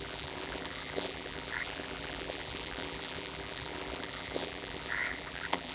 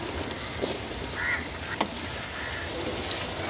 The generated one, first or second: first